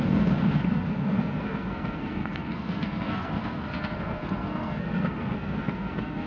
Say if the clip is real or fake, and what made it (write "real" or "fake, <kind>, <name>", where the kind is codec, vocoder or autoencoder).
fake, codec, SNAC